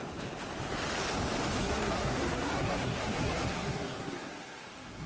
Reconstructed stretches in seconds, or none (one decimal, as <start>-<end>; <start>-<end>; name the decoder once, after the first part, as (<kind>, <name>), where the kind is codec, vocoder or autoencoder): 1.6-5.1 (codec, SNAC)